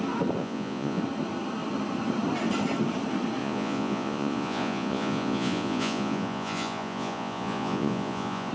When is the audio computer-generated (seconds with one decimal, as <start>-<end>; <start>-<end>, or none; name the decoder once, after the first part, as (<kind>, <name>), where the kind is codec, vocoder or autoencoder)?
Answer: 0.4-1.0 (vocoder, Vocos); 3.4-8.5